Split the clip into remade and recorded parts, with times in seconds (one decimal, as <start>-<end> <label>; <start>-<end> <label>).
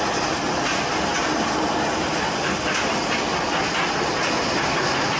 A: 0.0-5.2 recorded